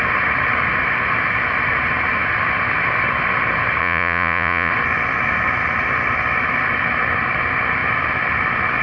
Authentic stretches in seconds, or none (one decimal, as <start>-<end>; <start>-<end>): 0.0-3.8; 4.7-8.8

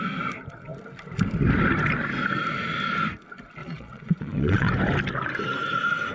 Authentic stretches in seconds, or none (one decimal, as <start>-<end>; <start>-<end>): 0.0-3.6; 4.7-6.1